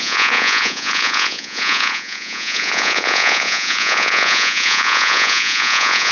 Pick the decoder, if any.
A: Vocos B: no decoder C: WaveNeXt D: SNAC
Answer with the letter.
A